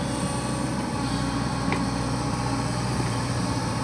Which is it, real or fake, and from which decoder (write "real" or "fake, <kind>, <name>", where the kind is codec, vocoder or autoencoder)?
fake, vocoder, BigVGAN v2